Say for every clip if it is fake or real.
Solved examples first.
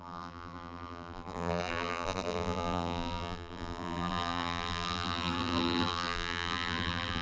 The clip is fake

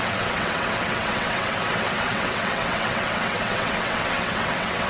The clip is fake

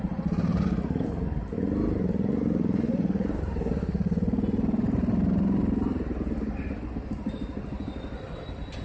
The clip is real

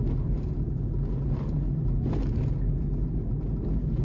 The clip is real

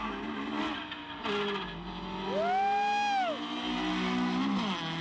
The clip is real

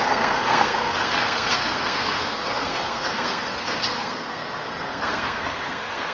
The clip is fake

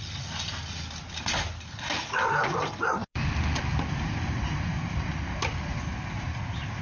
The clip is real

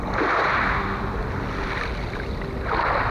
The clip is real